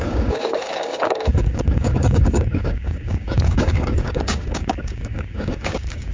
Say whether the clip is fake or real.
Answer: fake